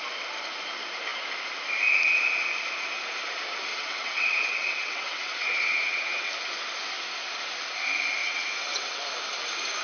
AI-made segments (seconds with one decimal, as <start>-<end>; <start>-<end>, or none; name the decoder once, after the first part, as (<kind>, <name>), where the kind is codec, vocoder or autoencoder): 3.7-6.3 (vocoder, WaveNeXt); 8.2-9.0